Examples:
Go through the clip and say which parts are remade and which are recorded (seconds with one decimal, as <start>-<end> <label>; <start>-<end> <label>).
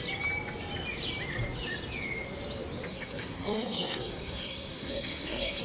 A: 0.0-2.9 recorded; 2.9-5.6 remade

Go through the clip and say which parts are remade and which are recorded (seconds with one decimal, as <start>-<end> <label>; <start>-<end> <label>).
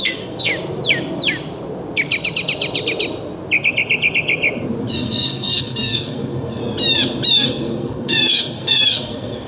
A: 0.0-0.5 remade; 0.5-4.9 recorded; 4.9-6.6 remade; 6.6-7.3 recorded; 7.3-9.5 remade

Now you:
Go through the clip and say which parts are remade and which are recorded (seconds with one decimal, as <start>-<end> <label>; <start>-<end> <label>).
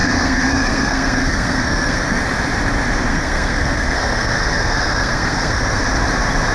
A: 0.0-2.2 remade; 2.2-3.1 recorded; 3.1-5.8 remade; 5.8-6.5 recorded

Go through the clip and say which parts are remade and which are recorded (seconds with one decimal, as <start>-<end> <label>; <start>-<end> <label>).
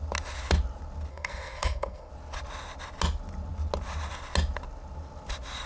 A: 0.0-1.1 recorded; 1.1-2.1 remade; 2.1-5.7 recorded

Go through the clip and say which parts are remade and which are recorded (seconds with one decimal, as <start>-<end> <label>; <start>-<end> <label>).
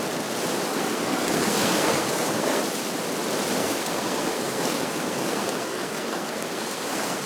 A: 0.0-0.7 recorded; 0.7-2.6 remade; 2.6-3.6 recorded; 3.6-7.3 remade